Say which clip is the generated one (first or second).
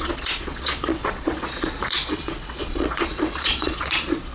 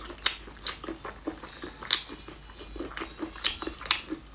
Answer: first